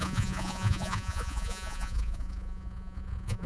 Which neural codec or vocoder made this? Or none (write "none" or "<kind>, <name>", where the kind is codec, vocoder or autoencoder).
vocoder, Vocos